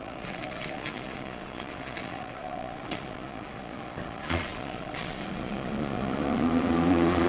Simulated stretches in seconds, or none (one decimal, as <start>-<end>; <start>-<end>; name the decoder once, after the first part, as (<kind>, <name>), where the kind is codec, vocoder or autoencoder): 0.0-7.3 (vocoder, Vocos)